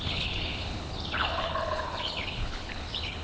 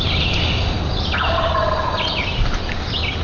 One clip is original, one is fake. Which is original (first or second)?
second